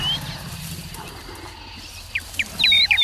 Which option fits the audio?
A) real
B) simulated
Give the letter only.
A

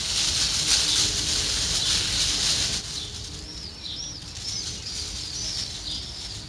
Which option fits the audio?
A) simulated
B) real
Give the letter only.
B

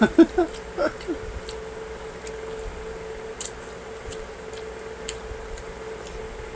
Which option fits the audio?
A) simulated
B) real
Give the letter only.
B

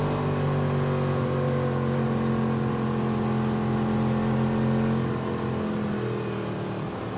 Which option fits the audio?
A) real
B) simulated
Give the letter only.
A